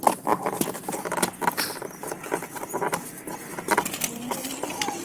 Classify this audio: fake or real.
real